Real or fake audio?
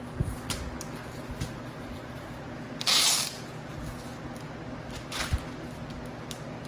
real